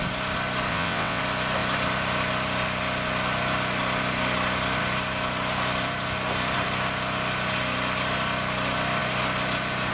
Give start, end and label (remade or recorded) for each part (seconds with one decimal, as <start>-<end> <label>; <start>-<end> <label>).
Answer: 0.0-0.7 recorded; 0.7-1.2 remade; 1.2-9.9 recorded